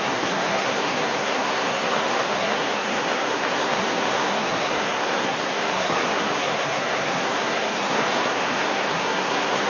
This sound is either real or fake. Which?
fake